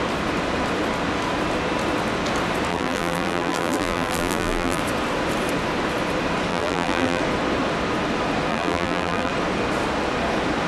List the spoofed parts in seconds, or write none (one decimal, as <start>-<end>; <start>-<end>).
2.7-4.8; 6.5-7.2; 8.5-9.3